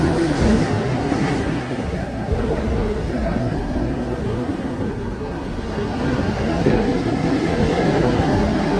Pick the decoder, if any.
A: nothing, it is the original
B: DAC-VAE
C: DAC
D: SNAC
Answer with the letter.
D